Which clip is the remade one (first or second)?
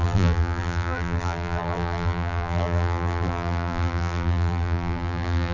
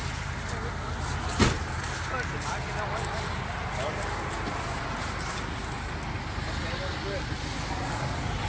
first